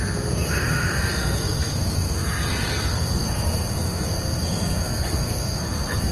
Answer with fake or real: fake